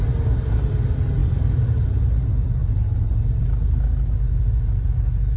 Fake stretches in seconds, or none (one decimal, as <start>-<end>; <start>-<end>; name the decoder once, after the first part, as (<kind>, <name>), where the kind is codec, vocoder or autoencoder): none

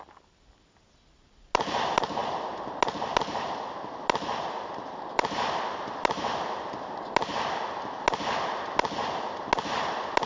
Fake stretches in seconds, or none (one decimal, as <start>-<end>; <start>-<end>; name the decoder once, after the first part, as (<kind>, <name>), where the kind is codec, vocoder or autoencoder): none

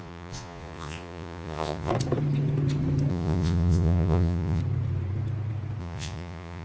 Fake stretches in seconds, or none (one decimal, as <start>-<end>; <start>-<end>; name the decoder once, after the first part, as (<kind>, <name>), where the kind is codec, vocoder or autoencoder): 0.0-1.9 (vocoder, Vocos); 3.1-4.6; 5.8-6.6

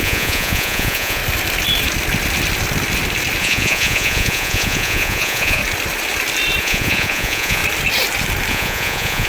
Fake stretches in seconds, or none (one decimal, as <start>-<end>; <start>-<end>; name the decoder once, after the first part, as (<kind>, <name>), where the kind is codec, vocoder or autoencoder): 0.0-1.2 (vocoder, Vocos); 3.4-5.6; 6.6-7.6; 8.5-9.3

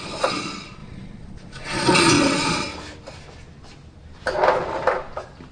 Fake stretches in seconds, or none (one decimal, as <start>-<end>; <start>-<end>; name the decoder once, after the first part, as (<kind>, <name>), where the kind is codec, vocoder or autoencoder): 0.0-2.7 (vocoder, Vocos)

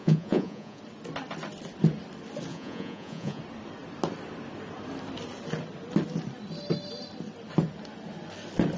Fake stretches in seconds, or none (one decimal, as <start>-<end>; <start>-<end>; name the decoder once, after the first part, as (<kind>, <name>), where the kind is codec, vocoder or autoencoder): 0.0-0.8 (vocoder, Vocos); 2.5-3.4

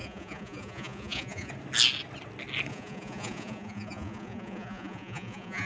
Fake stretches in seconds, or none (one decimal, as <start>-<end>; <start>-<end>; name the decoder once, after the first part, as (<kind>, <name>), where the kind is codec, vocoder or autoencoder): 0.0-1.5 (vocoder, Vocos); 2.7-5.7